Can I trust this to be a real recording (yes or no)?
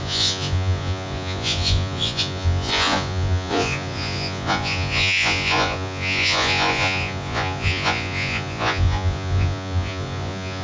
no